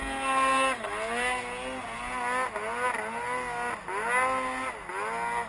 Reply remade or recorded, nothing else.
recorded